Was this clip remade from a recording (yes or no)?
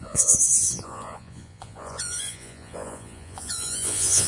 yes